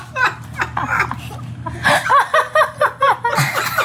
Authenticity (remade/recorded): recorded